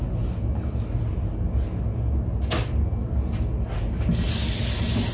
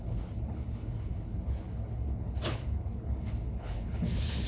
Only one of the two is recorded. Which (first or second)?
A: first